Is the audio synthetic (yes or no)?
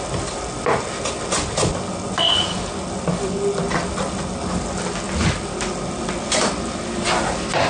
no